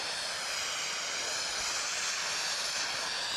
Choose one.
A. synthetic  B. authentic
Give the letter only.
B